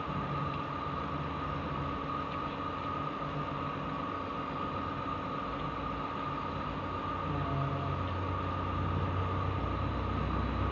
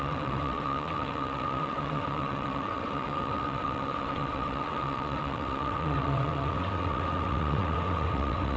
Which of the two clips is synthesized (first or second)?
second